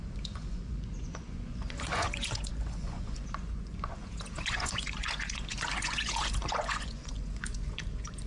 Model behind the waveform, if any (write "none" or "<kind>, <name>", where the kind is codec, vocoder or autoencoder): vocoder, Vocos